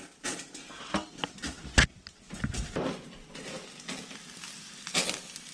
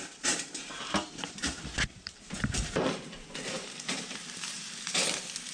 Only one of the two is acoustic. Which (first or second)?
first